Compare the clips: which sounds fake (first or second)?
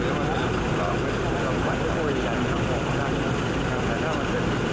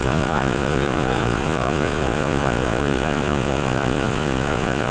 second